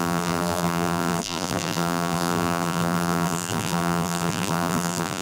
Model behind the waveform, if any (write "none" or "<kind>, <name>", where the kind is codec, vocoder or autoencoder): vocoder, BigVGAN v2